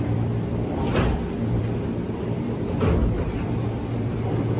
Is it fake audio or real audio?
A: fake